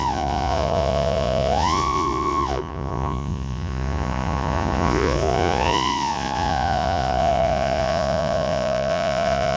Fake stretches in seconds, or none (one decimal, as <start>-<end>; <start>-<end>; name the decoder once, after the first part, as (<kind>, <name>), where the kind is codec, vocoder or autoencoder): 0.0-9.6 (vocoder, Vocos)